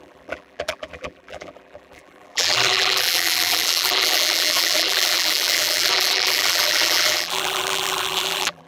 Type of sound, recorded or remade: remade